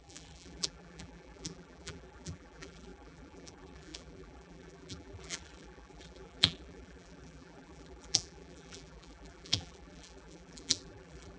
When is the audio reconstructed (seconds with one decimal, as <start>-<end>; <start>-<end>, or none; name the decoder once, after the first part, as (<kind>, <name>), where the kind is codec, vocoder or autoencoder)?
0.0-11.4 (vocoder, BigVGAN v2)